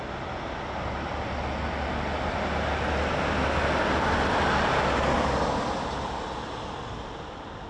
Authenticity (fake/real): real